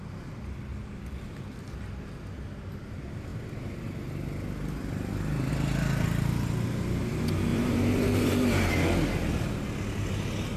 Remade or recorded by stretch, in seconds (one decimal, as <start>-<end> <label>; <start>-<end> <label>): 0.0-7.5 recorded; 7.5-8.7 remade; 8.7-10.6 recorded